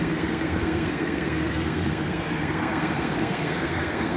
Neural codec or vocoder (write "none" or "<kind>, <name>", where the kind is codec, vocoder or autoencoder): codec, SNAC